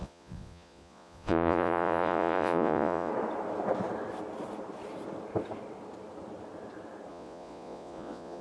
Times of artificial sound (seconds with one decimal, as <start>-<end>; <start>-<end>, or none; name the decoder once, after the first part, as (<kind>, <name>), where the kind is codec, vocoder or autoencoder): 0.0-3.1 (vocoder, Vocos); 7.1-8.4